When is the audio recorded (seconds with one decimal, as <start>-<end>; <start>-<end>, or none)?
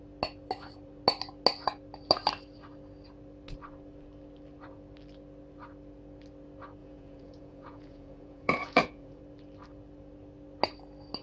0.0-6.8; 9.2-11.2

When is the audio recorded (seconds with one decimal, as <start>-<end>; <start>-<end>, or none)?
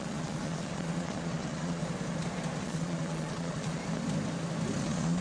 1.8-2.6; 3.8-4.8